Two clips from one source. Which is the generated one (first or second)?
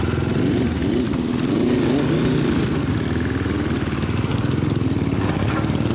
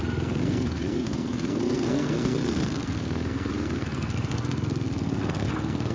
second